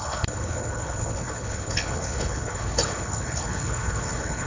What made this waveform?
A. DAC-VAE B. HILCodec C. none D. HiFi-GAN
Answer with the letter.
B